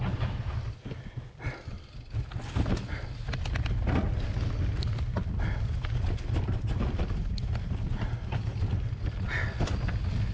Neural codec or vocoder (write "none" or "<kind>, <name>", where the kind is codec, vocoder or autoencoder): none